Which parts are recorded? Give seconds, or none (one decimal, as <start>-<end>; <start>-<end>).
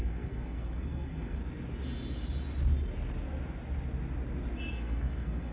1.4-4.7